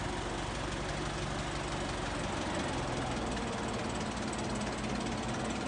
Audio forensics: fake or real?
real